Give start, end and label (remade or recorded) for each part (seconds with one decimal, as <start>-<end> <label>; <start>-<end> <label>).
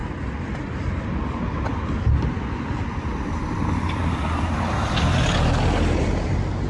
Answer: 0.0-6.7 recorded